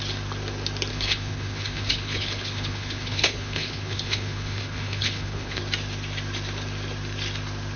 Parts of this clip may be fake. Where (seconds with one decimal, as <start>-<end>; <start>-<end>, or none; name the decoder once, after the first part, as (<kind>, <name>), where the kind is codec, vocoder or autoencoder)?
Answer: 0.9-5.6 (codec, HILCodec)